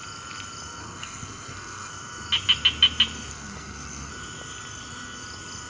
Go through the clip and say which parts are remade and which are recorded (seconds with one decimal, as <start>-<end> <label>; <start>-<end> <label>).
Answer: 0.0-0.8 recorded; 0.8-1.9 remade; 1.9-3.3 recorded; 3.3-4.1 remade; 4.1-5.7 recorded